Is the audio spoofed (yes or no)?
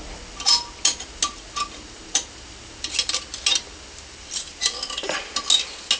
no